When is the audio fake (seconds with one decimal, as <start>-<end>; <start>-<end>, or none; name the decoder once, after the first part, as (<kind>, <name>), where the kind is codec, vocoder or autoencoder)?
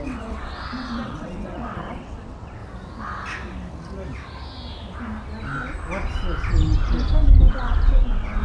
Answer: 0.0-2.6 (vocoder, WaveNeXt); 7.5-8.4